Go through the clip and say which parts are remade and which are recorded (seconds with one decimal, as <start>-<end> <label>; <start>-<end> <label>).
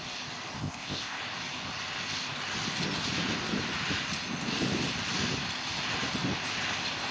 0.0-0.6 recorded; 0.6-1.2 remade; 1.2-7.1 recorded